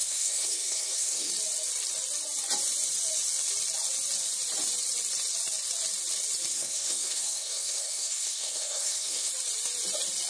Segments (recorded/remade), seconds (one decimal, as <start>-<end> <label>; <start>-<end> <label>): 0.0-1.3 remade; 1.3-6.5 recorded; 6.5-9.3 remade; 9.3-10.3 recorded